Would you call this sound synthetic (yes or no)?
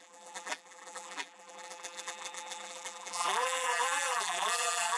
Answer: yes